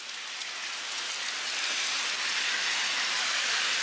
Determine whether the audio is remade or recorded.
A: recorded